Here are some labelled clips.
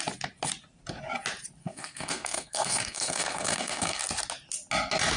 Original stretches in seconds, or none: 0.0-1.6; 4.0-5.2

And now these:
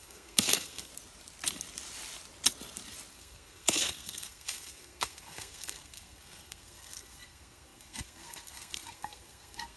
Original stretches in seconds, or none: 0.9-3.1

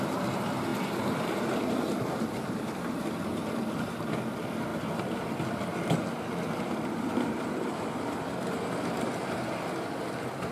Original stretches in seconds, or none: none

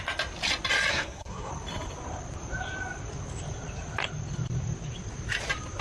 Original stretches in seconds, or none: 0.0-0.9; 1.5-5.8

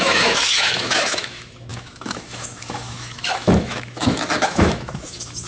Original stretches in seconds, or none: none

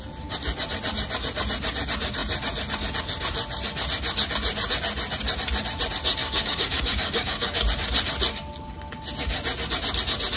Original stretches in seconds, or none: 0.0-6.2; 7.6-10.4